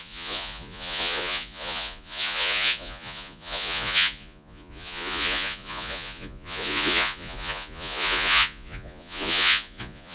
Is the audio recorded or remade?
remade